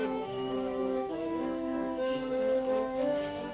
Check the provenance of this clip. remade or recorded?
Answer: remade